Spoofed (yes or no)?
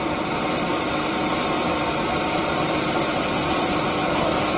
no